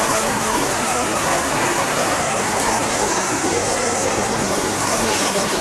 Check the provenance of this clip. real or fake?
fake